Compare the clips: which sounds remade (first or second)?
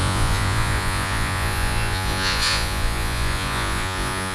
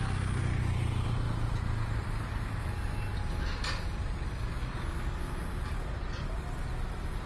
first